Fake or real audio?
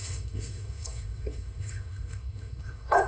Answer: fake